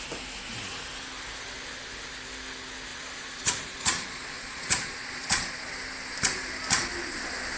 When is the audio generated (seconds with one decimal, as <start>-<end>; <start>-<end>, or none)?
2.9-5.7